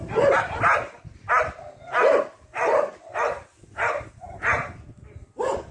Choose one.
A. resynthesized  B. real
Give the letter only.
B